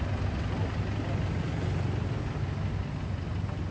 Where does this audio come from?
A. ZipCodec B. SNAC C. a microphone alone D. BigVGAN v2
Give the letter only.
C